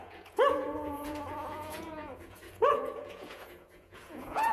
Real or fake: fake